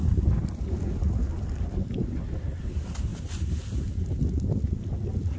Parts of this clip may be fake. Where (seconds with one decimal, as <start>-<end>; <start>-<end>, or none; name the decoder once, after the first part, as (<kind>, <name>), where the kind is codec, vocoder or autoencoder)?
3.1-3.8 (vocoder, BigVGAN v2)